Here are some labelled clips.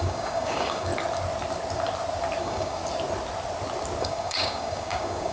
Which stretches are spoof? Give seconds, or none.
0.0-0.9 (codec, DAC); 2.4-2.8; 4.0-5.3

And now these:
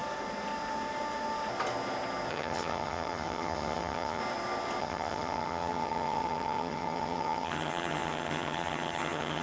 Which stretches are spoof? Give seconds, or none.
2.3-4.2 (vocoder, HiFi-GAN); 4.8-9.4

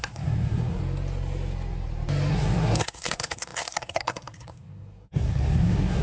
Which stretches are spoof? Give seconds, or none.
0.0-0.8 (codec, SNAC); 2.3-6.0

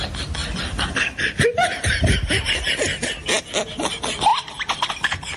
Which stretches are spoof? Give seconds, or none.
0.4-2.6 (vocoder, BigVGAN v2); 4.3-4.9

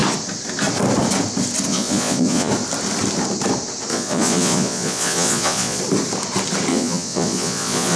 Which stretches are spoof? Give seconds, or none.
1.7-2.5 (vocoder, Vocos); 3.9-5.8; 6.7-8.0

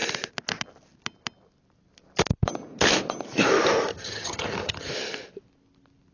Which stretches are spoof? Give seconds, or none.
3.9-4.9 (vocoder, HiFi-GAN)

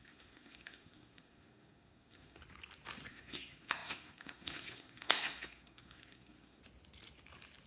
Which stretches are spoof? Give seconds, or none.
0.0-2.4 (codec, SNAC); 3.1-6.6

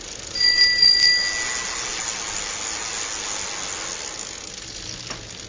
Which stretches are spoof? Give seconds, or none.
none